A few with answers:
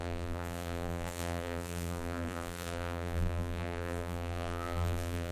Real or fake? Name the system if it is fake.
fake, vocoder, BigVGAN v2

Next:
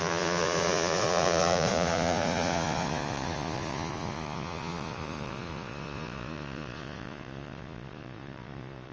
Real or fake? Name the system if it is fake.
fake, vocoder, Vocos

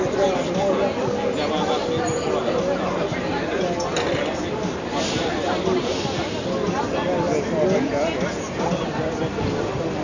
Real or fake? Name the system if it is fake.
real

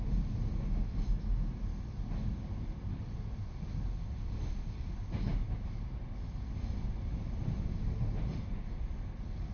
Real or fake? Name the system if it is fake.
real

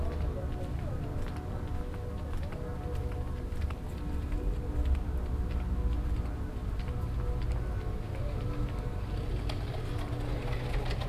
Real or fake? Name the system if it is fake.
real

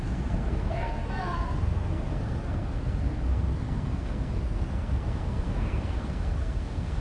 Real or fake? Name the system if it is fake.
fake, codec, SNAC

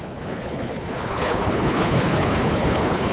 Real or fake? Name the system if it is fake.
fake, codec, HILCodec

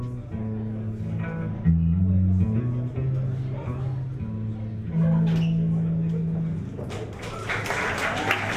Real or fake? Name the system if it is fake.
real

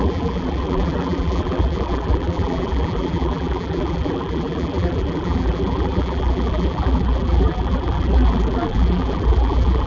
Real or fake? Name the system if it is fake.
fake, vocoder, BigVGAN v2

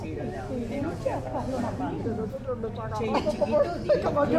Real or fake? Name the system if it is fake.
real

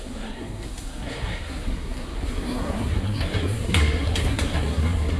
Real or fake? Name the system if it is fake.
fake, codec, SNAC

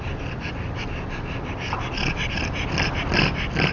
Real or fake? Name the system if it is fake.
real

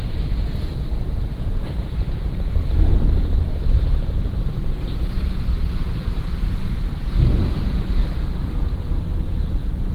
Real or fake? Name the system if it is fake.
fake, vocoder, Vocos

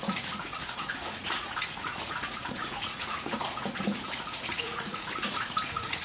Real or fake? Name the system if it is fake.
fake, vocoder, Vocos